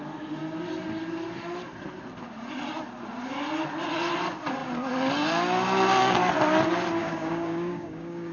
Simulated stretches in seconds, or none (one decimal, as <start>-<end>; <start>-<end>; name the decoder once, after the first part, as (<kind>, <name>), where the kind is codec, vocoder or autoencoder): 7.0-8.3 (codec, DAC)